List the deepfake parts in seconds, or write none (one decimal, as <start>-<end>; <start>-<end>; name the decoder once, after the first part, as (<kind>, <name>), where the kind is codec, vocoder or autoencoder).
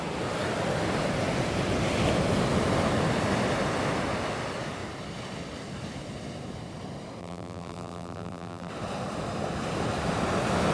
7.2-8.7 (vocoder, BigVGAN v2)